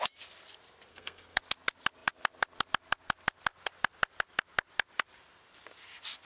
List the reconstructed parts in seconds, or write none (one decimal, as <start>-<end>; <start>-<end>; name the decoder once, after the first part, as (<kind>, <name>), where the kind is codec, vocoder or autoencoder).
0.9-1.4 (codec, SNAC)